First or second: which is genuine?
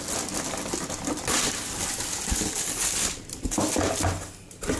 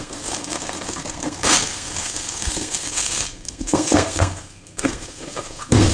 first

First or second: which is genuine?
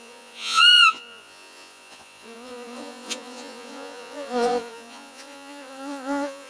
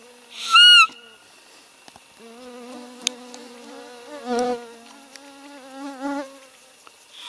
second